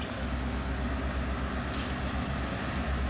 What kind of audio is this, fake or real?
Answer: real